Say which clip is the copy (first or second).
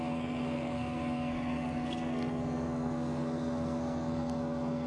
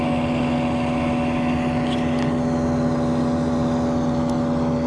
first